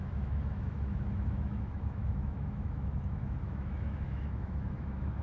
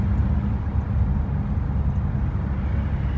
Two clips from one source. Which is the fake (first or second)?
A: first